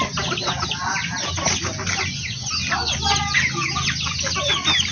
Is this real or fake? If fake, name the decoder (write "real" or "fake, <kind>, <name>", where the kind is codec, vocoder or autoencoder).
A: real